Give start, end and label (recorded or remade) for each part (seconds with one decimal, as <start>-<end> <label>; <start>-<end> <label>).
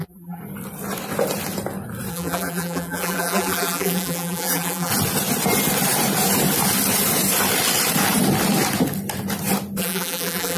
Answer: 0.0-0.4 remade; 0.4-2.1 recorded; 2.1-4.9 remade; 4.9-9.8 recorded; 9.8-10.6 remade